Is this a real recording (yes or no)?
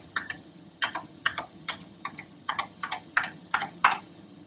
no